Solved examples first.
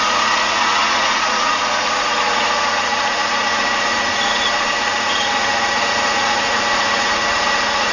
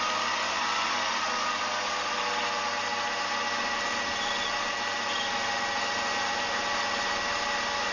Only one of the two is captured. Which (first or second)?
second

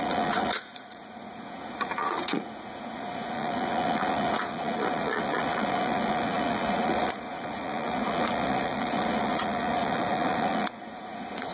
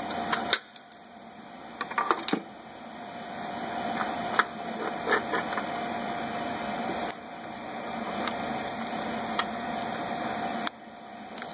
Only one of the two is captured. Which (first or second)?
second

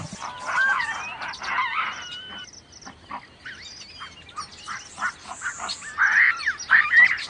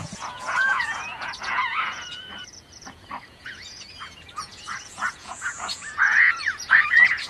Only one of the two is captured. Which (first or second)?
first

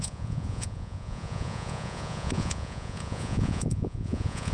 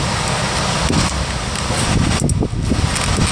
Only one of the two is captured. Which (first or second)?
second